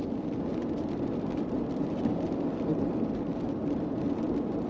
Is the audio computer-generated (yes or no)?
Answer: no